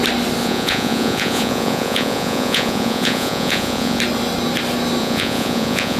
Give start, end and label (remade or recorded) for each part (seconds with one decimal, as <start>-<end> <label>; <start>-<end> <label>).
0.0-0.4 recorded; 0.4-4.0 remade; 4.0-5.0 recorded; 5.0-6.0 remade